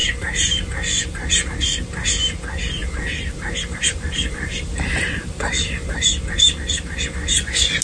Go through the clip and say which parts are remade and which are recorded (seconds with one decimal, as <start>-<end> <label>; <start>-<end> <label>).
0.0-2.8 recorded; 2.8-6.1 remade; 6.1-7.8 recorded